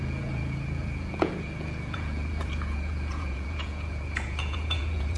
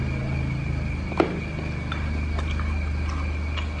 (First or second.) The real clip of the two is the second